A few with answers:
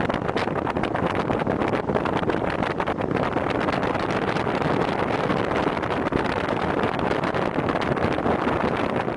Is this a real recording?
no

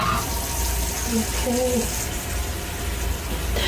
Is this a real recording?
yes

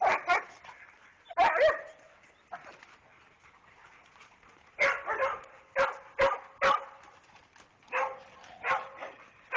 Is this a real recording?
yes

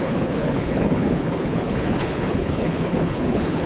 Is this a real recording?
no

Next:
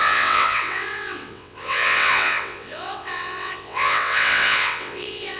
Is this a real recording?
no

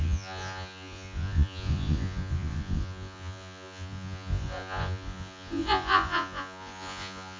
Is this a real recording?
no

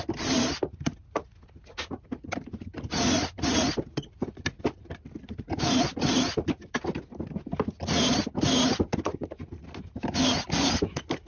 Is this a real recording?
yes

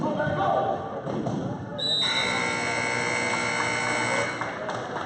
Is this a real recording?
yes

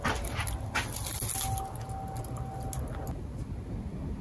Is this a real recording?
yes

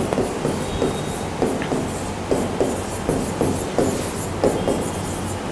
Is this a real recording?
yes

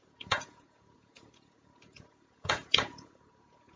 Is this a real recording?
no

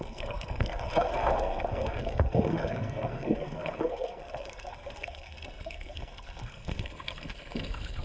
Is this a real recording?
no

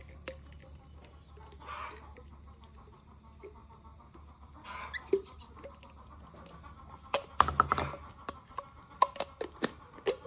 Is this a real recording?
yes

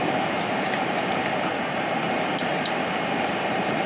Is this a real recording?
no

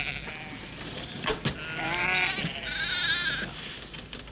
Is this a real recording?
yes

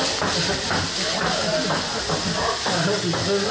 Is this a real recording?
yes